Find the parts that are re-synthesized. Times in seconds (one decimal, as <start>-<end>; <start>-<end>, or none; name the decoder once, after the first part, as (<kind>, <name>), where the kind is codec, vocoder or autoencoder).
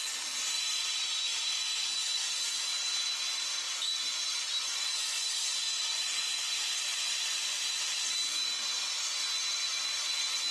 6.9-7.6 (vocoder, Vocos)